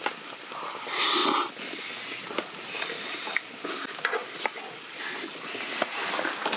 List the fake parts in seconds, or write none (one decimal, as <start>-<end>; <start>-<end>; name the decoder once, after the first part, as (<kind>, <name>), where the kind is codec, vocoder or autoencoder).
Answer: none

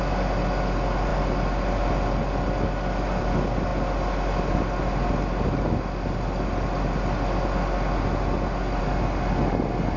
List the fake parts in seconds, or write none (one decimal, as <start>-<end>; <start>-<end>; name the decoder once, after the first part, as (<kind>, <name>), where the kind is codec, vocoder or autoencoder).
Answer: none

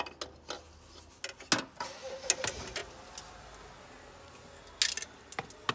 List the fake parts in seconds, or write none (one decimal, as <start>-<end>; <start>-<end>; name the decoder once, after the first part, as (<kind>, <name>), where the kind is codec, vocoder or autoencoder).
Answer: none

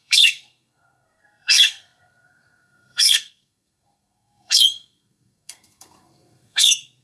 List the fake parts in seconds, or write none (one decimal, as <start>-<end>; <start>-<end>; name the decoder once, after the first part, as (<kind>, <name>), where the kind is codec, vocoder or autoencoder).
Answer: 0.0-7.0 (codec, SNAC)

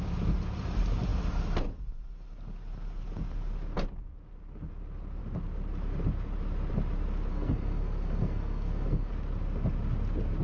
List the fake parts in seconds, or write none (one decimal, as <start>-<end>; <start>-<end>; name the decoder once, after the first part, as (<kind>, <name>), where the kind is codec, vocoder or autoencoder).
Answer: 7.3-9.1 (codec, SNAC)